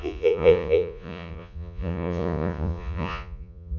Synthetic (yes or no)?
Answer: yes